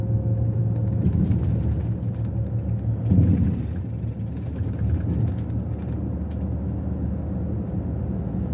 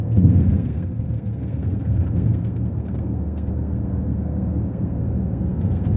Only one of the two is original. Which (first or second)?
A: first